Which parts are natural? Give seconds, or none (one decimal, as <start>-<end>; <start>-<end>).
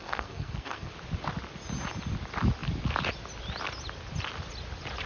0.9-5.1